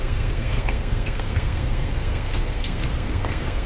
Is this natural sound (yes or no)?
no